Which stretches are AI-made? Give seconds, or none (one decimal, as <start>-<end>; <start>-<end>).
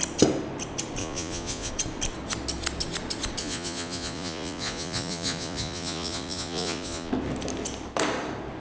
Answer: 1.0-1.7; 3.4-7.1